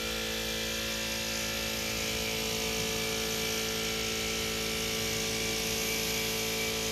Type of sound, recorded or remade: recorded